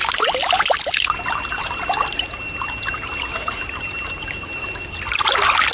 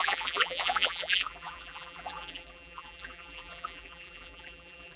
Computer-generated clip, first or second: second